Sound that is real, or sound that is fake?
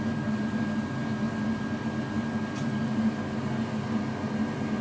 real